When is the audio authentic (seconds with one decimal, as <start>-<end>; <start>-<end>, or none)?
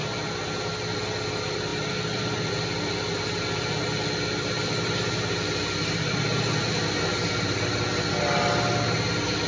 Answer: 0.0-9.5